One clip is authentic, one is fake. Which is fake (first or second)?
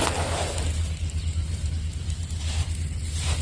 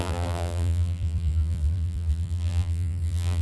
second